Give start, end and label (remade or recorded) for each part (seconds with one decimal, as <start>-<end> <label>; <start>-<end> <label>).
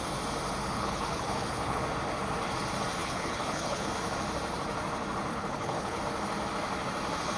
0.0-0.6 recorded; 0.6-1.8 remade; 1.8-3.0 recorded; 3.0-3.9 remade; 3.9-5.3 recorded; 5.3-6.0 remade; 6.0-7.4 recorded